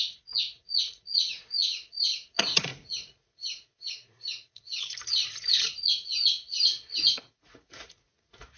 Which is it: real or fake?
fake